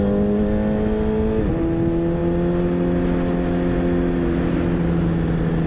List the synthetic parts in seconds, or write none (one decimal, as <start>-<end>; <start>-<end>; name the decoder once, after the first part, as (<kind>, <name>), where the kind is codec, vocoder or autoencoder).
none